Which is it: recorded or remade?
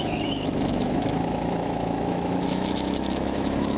remade